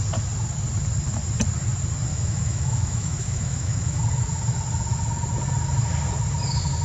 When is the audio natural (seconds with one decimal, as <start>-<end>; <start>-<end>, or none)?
0.0-2.1; 4.0-6.8